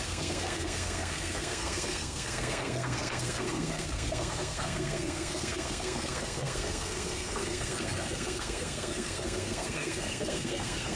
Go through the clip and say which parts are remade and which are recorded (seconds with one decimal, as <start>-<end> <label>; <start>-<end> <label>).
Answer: 0.0-11.0 remade